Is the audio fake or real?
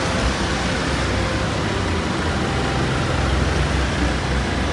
real